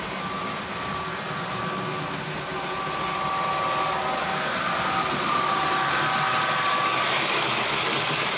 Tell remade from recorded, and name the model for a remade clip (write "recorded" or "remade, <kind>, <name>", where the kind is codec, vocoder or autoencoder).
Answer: recorded